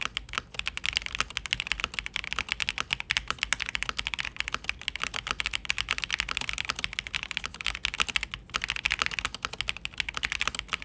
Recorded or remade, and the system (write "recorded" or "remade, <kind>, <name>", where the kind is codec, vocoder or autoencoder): recorded